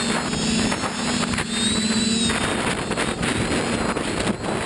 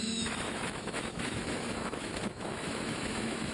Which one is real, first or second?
first